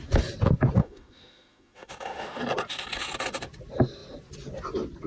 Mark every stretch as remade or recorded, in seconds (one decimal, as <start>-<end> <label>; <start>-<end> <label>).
0.0-0.8 recorded; 0.8-2.4 remade; 2.4-5.1 recorded